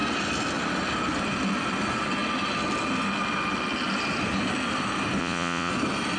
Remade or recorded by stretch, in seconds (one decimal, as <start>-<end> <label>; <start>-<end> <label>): 0.0-5.2 recorded; 5.2-5.7 remade; 5.7-6.2 recorded